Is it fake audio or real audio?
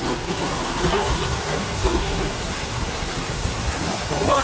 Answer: fake